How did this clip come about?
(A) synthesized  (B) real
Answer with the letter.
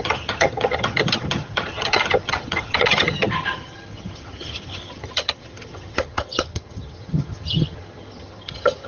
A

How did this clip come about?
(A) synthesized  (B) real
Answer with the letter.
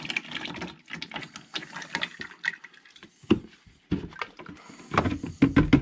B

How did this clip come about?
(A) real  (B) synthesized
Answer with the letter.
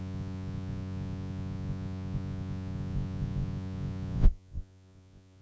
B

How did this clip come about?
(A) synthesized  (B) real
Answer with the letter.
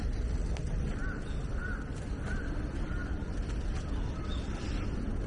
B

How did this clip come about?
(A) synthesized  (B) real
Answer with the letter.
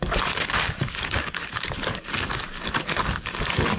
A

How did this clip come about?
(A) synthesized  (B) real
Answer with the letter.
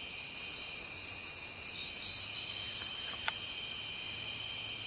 A